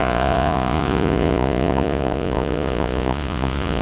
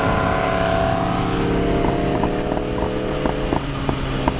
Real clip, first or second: second